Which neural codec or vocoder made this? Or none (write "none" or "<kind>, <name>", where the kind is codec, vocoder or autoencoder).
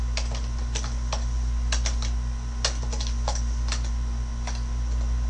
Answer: none